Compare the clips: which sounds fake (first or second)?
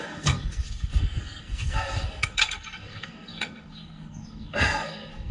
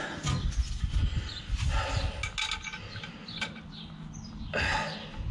first